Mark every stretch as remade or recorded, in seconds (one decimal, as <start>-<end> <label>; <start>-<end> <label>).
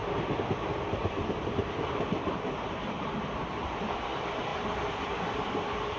0.0-6.0 recorded